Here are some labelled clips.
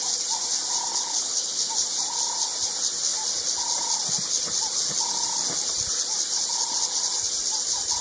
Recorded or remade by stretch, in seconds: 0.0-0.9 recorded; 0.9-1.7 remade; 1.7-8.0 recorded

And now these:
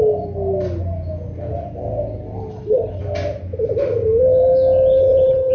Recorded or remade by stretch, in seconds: 0.0-2.5 recorded; 2.5-3.0 remade; 3.0-5.0 recorded; 5.0-5.5 remade

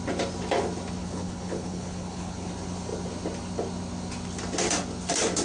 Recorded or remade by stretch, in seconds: 0.0-1.0 recorded; 1.0-2.5 remade; 2.5-5.4 recorded

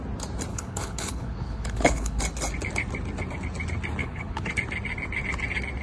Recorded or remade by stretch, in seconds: 0.0-0.5 recorded; 0.5-2.2 remade; 2.2-4.0 recorded; 4.0-4.5 remade; 4.5-5.8 recorded

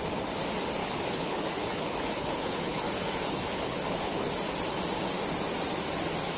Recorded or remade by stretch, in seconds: 0.0-0.8 recorded; 0.8-4.3 remade; 4.3-6.4 recorded

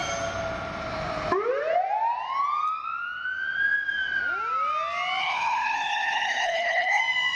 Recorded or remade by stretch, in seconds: 0.0-5.2 recorded; 5.2-7.0 remade; 7.0-7.4 recorded